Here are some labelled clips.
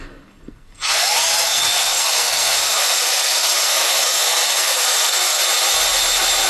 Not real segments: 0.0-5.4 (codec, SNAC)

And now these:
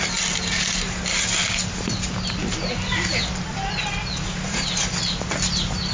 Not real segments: none